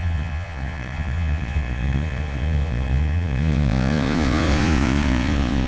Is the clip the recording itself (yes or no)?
no